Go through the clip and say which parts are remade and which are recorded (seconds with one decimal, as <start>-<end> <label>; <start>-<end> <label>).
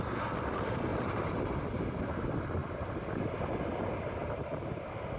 0.0-5.2 remade